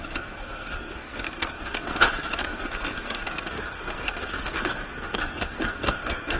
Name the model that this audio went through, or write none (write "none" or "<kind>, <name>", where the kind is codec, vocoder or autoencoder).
codec, SNAC